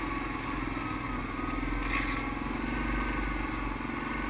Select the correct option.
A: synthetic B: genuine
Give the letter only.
B